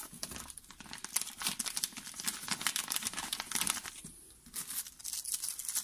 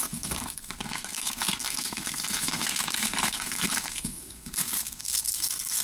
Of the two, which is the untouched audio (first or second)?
first